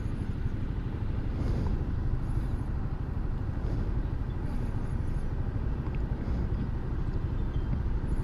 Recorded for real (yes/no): yes